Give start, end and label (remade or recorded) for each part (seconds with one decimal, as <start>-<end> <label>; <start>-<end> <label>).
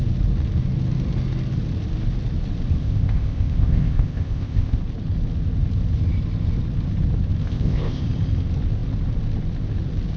0.0-2.8 recorded; 2.8-4.8 remade; 4.8-7.4 recorded; 7.4-8.0 remade; 8.0-10.2 recorded